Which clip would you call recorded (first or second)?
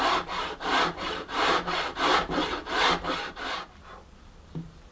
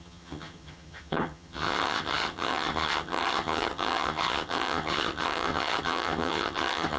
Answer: first